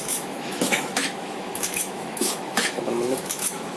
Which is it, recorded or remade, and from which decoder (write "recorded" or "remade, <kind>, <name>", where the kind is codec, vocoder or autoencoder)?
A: remade, autoencoder, DAC-VAE